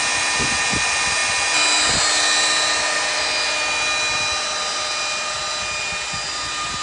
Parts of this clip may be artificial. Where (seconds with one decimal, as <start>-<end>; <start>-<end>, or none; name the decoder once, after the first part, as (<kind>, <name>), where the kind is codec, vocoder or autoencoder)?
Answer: none